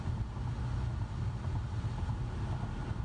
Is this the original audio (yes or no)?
yes